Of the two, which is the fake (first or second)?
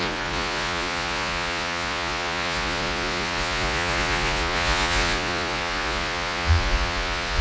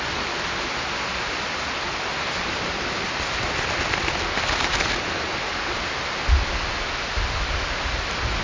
first